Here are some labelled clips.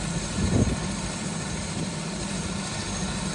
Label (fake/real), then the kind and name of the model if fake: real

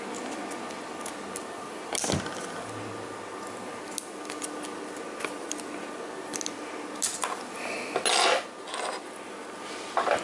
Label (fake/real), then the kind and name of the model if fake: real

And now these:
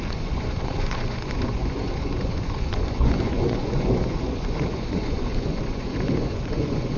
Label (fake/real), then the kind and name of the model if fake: fake, vocoder, Vocos